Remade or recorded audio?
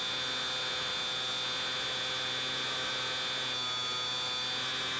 recorded